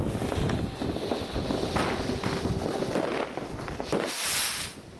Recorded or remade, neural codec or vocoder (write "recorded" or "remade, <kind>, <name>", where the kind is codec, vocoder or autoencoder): recorded